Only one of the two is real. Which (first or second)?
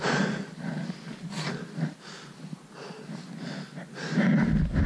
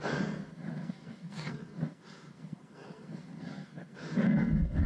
first